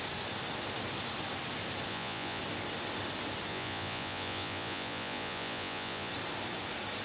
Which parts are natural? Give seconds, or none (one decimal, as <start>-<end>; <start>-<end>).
0.0-1.9; 2.4-3.5; 6.1-7.0